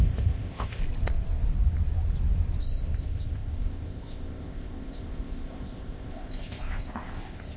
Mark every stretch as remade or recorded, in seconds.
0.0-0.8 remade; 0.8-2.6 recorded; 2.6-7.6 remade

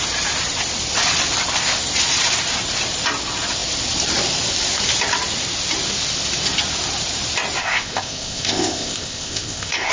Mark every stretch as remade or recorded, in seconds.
0.0-7.6 recorded; 7.6-9.9 remade

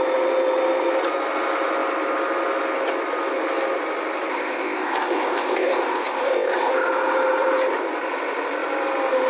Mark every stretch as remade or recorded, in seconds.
0.0-4.3 recorded; 4.3-6.7 remade; 6.7-9.3 recorded

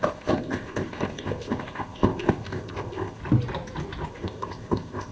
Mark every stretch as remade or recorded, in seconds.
0.0-3.2 remade; 3.2-4.1 recorded; 4.1-5.1 remade

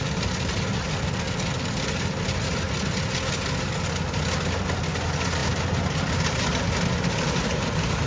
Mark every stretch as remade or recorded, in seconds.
0.0-8.1 recorded

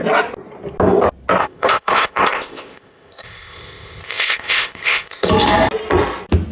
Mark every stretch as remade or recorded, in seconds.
0.0-1.4 recorded; 1.4-5.3 remade; 5.3-6.5 recorded